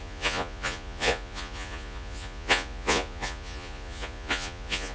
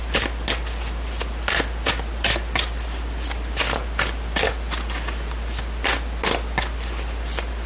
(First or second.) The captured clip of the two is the second